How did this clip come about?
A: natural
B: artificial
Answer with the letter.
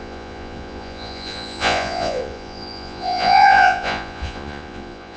B